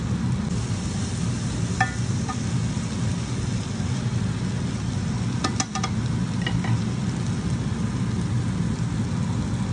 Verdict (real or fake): real